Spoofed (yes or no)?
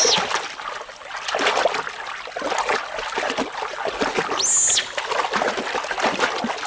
no